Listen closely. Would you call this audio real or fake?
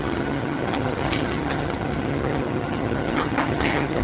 fake